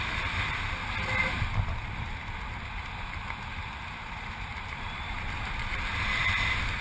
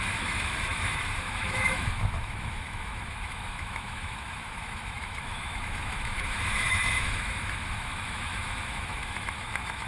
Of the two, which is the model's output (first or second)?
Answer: second